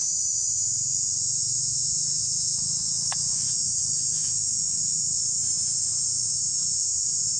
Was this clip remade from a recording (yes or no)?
yes